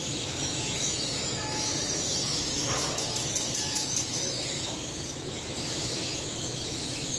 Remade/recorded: remade